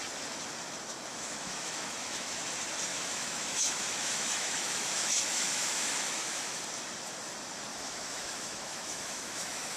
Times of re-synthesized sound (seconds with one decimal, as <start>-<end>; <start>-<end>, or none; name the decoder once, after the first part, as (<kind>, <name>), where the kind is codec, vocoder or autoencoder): 1.1-2.4 (autoencoder, DAC-VAE); 2.9-6.6; 7.7-9.8